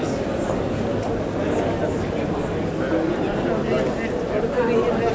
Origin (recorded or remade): recorded